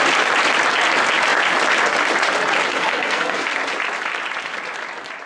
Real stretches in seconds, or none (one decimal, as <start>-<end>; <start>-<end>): 0.0-2.7; 3.6-5.3